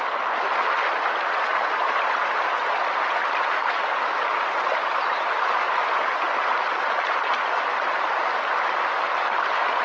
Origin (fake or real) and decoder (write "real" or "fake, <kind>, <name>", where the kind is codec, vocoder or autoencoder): real